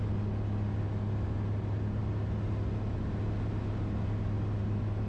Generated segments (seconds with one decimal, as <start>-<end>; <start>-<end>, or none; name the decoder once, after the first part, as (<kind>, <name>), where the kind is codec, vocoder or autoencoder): none